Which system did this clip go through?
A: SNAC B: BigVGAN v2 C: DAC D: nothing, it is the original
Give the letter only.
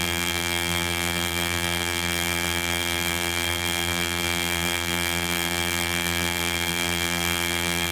B